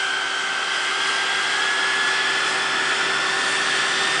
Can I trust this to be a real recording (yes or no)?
yes